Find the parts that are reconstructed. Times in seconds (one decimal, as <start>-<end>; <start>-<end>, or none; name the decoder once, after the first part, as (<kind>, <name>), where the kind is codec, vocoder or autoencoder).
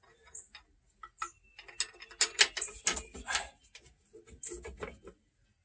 none